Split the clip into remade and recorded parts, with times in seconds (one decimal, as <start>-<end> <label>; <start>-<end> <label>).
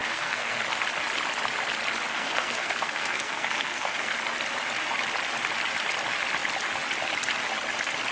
0.0-0.6 remade; 0.6-2.1 recorded; 2.1-4.2 remade; 4.2-8.1 recorded